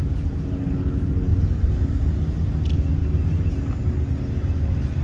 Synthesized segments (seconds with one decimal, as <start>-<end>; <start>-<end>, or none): none

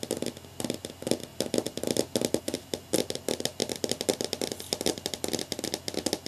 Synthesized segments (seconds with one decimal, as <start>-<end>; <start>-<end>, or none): none

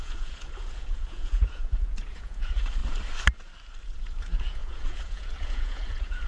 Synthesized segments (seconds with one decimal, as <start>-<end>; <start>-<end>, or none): 0.0-2.8; 3.8-6.3

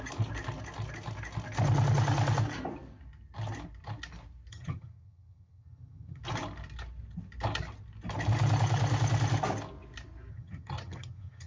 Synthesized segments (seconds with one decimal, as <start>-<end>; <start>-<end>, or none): 4.5-6.2; 10.3-11.5